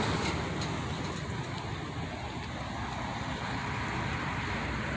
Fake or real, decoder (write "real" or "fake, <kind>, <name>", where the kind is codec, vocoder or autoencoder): real